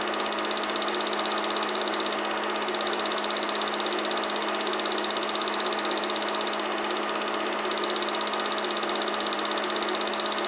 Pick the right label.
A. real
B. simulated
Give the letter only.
A